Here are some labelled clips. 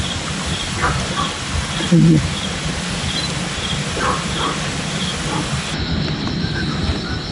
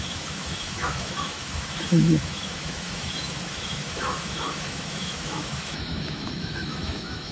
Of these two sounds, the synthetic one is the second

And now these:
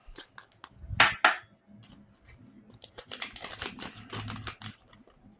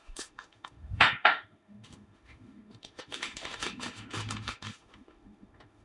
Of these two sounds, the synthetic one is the second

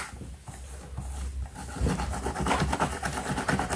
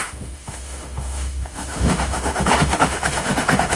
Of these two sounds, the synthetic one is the second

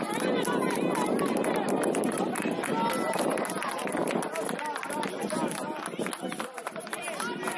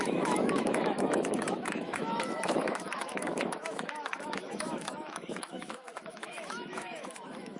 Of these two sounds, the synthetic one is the second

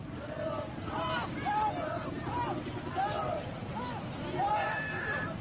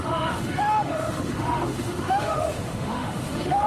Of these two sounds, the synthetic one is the second